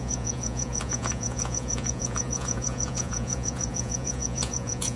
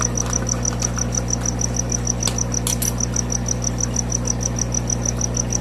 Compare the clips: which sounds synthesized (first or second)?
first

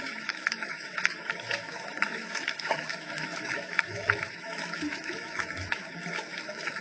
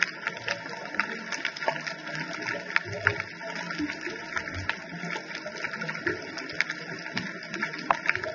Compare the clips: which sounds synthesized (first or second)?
first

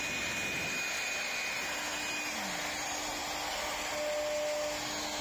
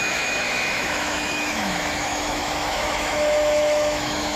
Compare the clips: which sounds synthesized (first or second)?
second